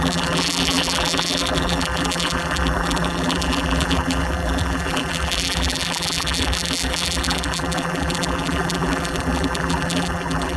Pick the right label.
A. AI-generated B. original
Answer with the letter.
A